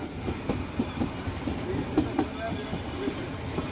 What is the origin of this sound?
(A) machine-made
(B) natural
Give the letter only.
B